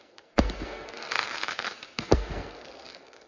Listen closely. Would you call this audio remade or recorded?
remade